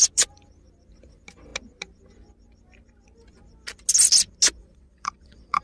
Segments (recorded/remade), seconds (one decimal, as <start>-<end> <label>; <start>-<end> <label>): 0.0-4.6 recorded; 4.6-5.6 remade